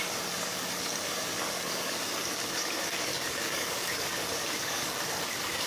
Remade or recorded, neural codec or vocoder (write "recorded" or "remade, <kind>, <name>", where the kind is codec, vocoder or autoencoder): remade, codec, DAC